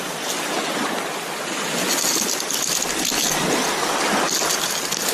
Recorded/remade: recorded